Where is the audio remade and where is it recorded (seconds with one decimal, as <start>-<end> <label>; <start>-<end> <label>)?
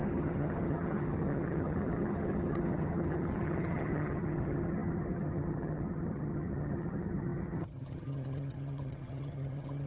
0.0-9.9 remade